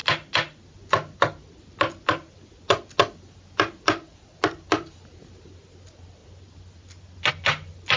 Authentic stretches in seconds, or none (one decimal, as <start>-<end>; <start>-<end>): 0.0-8.0